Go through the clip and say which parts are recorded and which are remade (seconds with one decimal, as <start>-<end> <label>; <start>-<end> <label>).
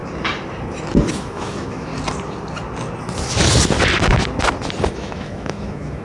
0.0-1.1 recorded; 1.1-1.9 remade; 1.9-4.9 recorded; 4.9-6.0 remade